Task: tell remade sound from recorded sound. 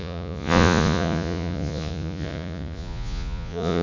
remade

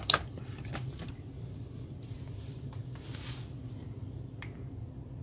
remade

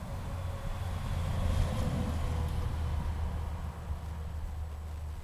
recorded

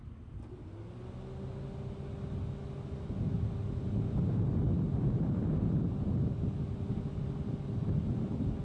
recorded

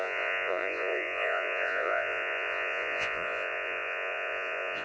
remade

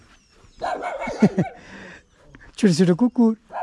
recorded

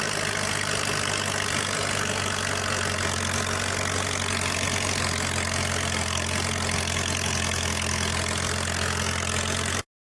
recorded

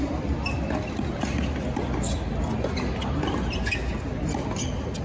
recorded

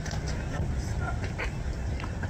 recorded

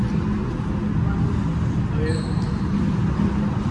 recorded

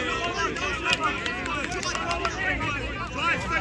recorded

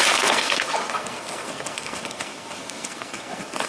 remade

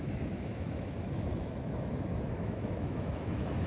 remade